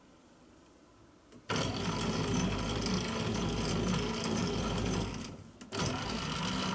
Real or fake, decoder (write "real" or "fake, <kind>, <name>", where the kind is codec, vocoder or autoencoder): real